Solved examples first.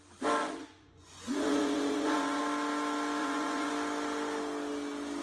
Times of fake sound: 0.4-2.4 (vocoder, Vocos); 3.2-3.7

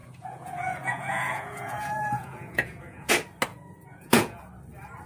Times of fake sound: 0.0-3.1 (vocoder, Vocos); 3.5-4.4

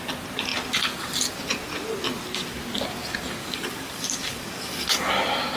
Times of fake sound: 3.4-5.1 (codec, DAC)

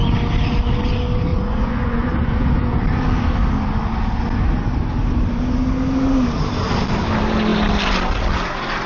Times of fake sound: 1.3-2.8 (vocoder, Vocos)

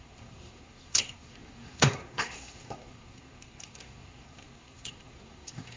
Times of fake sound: 0.0-5.8 (codec, SNAC)

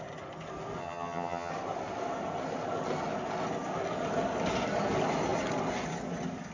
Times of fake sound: 0.8-1.5 (vocoder, HiFi-GAN)

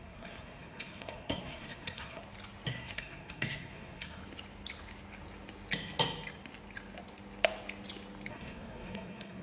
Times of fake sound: 0.0-2.2 (codec, SNAC); 2.7-4.2; 8.3-9.4

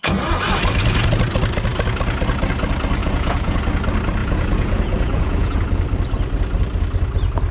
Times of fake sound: 3.0-3.6 (vocoder, Vocos); 4.2-5.6